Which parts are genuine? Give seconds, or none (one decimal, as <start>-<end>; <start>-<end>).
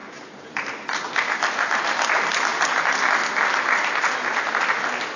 1.0-5.2